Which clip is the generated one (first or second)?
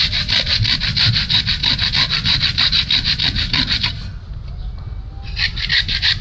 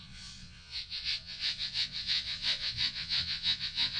second